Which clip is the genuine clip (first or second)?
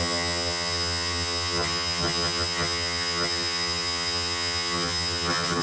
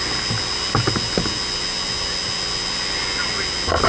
second